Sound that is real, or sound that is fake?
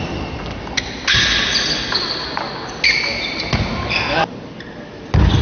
real